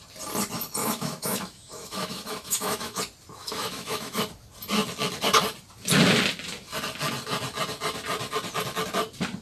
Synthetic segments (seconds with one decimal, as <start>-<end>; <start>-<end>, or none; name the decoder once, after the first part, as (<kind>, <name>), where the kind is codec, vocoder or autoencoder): 0.8-3.0 (autoencoder, DAC-VAE); 3.4-4.2